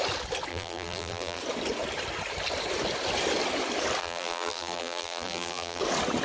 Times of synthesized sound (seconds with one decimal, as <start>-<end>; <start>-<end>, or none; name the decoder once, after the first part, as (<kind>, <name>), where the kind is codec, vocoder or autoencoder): 0.5-1.4 (vocoder, BigVGAN v2); 4.0-5.8